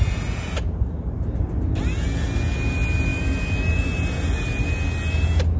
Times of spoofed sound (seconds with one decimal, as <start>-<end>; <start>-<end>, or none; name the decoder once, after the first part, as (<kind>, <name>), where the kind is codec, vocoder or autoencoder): none